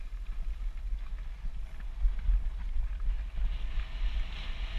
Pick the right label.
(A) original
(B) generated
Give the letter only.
A